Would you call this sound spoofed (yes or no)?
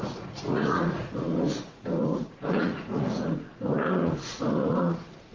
yes